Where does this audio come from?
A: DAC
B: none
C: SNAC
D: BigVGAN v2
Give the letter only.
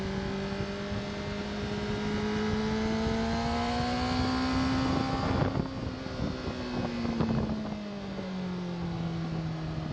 B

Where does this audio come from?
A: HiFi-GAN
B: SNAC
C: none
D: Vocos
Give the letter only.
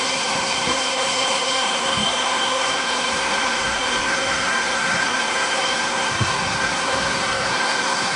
B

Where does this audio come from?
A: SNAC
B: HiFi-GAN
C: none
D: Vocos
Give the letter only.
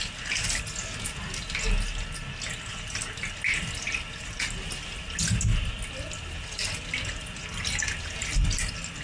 C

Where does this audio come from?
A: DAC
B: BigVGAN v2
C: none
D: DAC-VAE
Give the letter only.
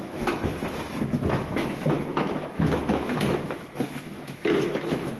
D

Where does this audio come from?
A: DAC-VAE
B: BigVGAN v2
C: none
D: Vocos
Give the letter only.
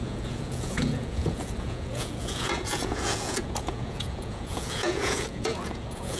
D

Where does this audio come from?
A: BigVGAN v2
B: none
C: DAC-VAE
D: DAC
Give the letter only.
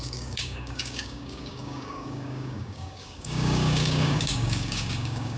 D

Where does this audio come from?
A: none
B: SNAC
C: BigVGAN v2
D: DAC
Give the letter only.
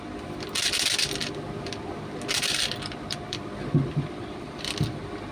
C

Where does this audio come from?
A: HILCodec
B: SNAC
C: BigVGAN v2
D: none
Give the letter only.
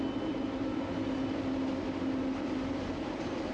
D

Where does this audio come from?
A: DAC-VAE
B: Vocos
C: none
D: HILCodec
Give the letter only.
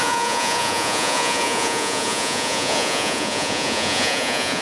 B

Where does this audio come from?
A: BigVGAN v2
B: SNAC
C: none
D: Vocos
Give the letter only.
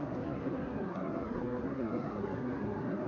B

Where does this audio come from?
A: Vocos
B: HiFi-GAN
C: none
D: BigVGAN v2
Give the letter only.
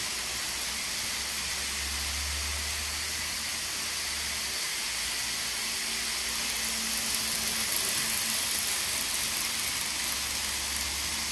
C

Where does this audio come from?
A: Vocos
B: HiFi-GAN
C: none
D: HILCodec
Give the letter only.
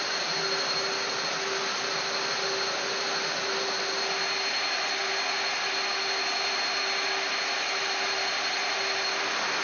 C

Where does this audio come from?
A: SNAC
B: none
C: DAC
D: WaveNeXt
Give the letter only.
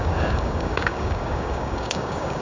C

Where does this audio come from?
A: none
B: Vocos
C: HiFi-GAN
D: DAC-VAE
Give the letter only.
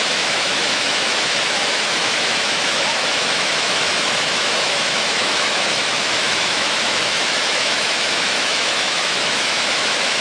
D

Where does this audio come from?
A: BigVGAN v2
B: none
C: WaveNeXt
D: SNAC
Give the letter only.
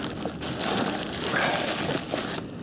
B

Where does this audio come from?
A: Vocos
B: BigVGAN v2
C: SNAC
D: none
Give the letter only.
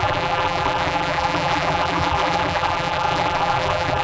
B